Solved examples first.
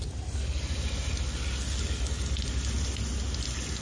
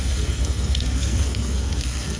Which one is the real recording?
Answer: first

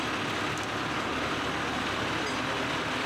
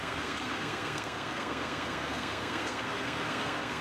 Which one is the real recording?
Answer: first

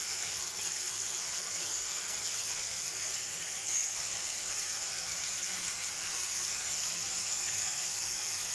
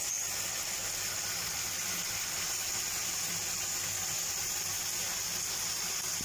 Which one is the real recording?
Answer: second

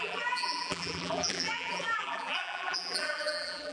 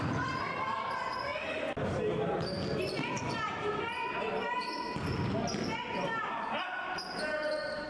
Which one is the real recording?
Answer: second